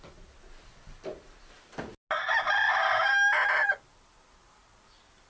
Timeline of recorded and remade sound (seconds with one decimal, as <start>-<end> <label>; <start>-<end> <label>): 0.0-3.4 recorded; 3.4-5.3 remade